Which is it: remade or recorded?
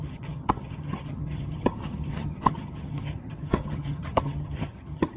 remade